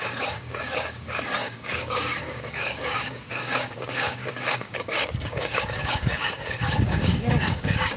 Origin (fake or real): fake